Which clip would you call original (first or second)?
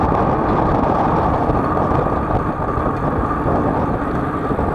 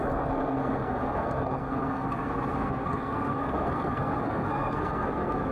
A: first